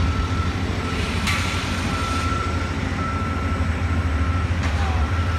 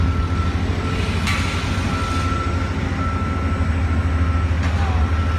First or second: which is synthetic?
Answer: first